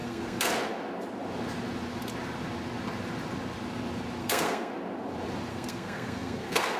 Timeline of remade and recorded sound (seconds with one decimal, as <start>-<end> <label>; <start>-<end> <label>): 0.0-0.5 remade; 0.5-4.2 recorded; 4.2-4.7 remade; 4.7-5.5 recorded; 5.5-6.8 remade